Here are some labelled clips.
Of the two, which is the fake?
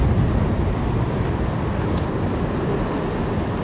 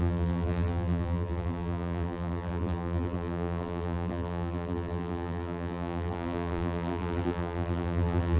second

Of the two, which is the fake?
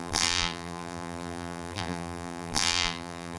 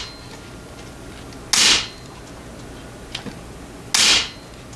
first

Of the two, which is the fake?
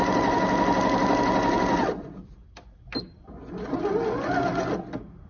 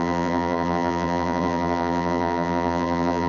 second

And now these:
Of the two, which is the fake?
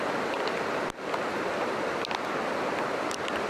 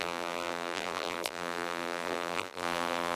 second